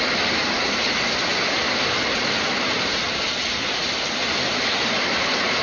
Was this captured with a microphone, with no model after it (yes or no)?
no